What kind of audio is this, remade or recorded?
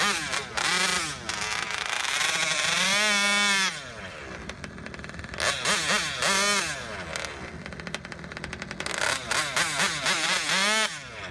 recorded